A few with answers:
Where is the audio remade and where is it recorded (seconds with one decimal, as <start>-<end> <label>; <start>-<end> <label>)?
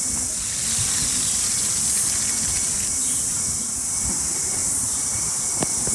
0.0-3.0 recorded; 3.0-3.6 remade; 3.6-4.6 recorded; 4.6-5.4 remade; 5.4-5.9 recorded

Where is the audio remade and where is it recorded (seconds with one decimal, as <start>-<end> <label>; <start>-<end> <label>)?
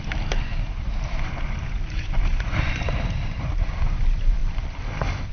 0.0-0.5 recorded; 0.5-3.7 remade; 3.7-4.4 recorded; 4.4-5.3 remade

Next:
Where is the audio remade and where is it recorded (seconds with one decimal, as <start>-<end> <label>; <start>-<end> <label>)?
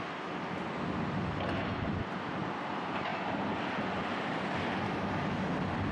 0.0-5.9 recorded